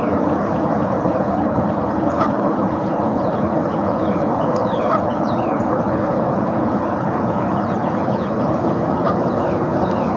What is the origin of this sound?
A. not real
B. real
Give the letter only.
A